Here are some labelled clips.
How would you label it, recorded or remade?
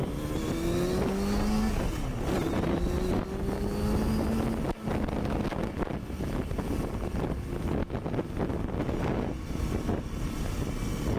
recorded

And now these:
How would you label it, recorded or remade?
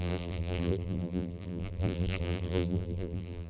remade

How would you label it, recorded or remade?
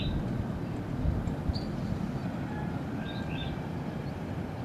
recorded